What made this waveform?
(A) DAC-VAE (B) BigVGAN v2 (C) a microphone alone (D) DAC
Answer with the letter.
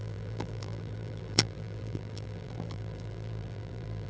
B